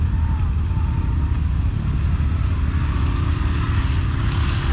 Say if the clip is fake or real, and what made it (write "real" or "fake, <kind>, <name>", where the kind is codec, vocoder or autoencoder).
real